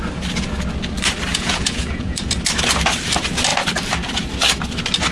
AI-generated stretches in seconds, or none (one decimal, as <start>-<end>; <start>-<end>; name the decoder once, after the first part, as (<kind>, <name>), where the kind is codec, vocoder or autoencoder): 1.3-2.2 (vocoder, Vocos)